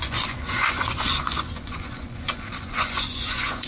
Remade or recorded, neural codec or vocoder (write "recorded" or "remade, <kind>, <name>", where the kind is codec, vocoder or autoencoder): remade, vocoder, Vocos